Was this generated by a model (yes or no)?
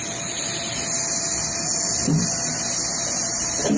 no